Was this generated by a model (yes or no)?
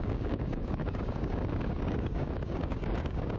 yes